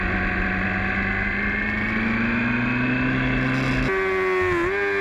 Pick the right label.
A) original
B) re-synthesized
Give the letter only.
A